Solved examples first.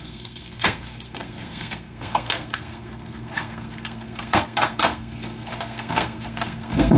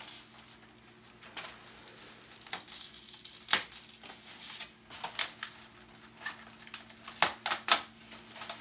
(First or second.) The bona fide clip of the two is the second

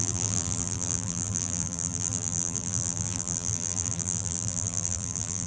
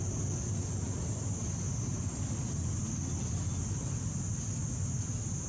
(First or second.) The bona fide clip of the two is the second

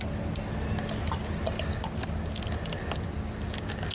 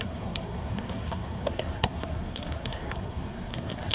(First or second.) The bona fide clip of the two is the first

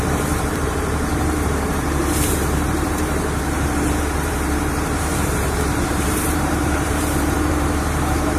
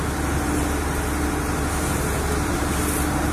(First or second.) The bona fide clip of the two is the second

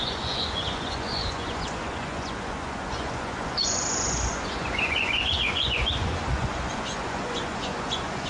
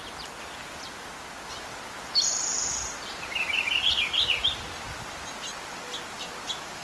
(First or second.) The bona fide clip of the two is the second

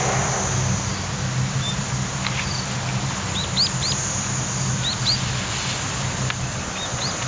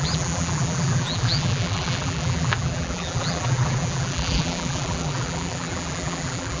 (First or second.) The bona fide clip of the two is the first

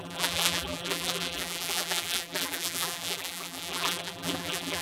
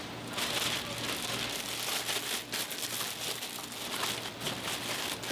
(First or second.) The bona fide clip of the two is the second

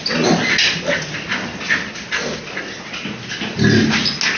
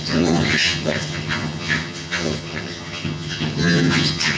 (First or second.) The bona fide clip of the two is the first